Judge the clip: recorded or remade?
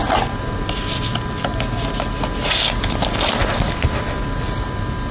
recorded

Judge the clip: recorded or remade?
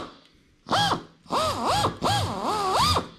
recorded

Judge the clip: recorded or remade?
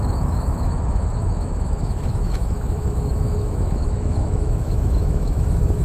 remade